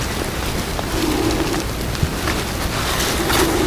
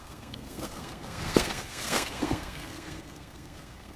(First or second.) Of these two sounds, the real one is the first